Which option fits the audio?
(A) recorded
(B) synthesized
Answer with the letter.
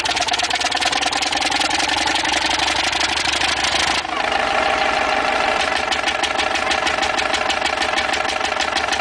A